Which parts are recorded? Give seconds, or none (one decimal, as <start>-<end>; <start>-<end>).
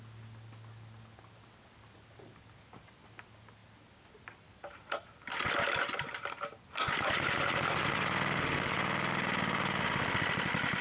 0.0-10.8